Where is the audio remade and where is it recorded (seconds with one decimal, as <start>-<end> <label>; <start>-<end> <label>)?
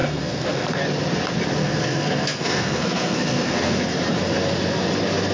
0.0-0.8 remade; 0.8-1.6 recorded; 1.6-3.8 remade; 3.8-5.3 recorded